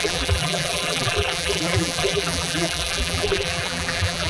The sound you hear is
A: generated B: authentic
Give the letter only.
A